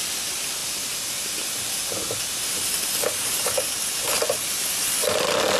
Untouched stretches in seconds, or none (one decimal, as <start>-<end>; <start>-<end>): 0.0-5.6

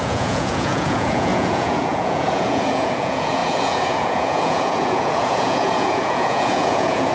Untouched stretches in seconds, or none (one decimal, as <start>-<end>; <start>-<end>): none